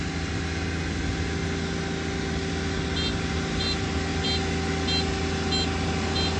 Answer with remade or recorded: recorded